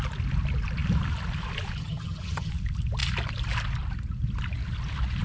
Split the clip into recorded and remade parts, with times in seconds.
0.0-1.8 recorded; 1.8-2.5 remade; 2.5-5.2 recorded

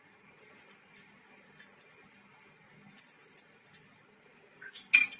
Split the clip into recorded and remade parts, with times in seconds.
0.0-5.2 recorded

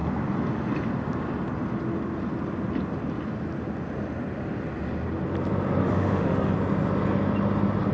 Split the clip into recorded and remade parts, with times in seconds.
0.0-5.8 recorded; 5.8-6.5 remade; 6.5-7.9 recorded

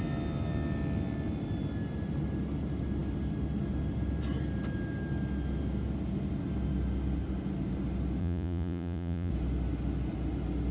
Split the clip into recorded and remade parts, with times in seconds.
0.0-8.2 recorded; 8.2-9.3 remade; 9.3-10.7 recorded

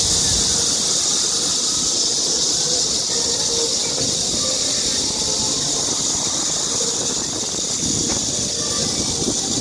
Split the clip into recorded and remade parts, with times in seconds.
0.0-1.5 recorded; 1.5-3.0 remade; 3.0-9.6 recorded

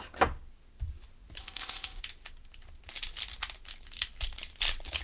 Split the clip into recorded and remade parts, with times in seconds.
0.0-1.4 recorded; 1.4-2.0 remade; 2.0-5.0 recorded